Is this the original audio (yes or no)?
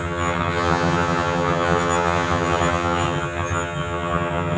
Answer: no